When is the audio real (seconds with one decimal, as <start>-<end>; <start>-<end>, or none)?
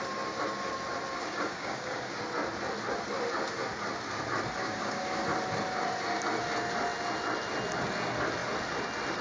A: 0.0-1.2; 2.2-4.6; 5.2-9.2